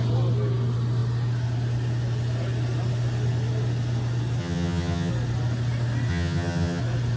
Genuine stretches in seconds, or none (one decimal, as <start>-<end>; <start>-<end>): 0.0-4.4; 5.1-6.1; 6.8-7.2